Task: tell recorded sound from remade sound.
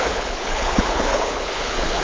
remade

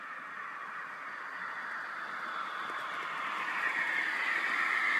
recorded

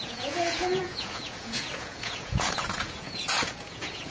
remade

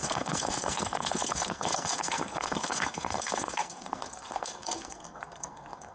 remade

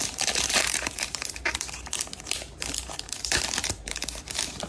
remade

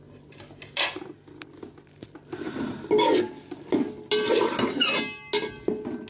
recorded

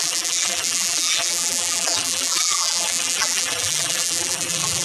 remade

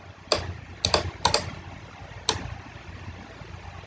recorded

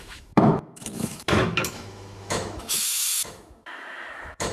remade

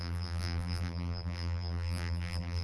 remade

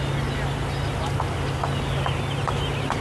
recorded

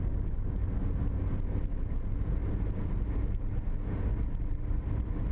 recorded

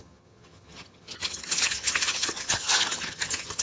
remade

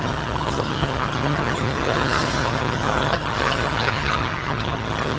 remade